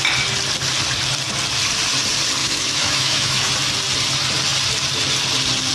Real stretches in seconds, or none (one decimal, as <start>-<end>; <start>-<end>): 0.0-2.4; 3.5-5.7